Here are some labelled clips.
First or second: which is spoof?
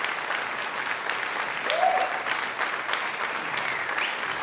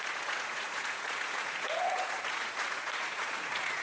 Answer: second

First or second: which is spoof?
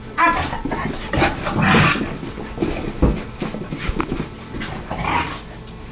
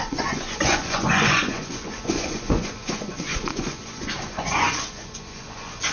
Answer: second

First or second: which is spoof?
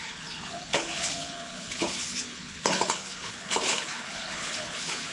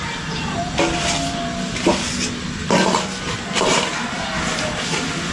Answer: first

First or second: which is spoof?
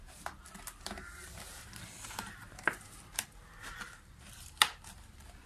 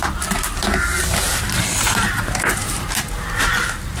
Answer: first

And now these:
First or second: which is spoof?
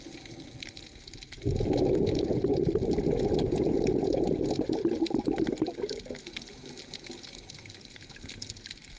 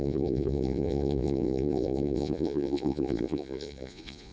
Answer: second